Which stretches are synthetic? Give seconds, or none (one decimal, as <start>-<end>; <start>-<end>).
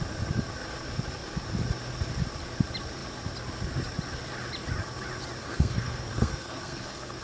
5.4-7.2